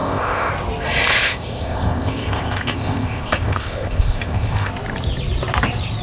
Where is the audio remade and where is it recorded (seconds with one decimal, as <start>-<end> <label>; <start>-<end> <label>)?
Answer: 0.0-0.5 remade; 0.5-1.1 recorded; 1.1-4.7 remade; 4.7-6.0 recorded